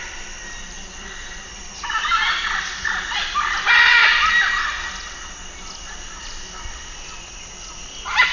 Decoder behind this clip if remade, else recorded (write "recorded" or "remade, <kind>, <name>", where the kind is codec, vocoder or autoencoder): recorded